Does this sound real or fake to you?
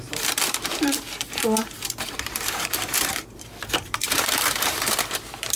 fake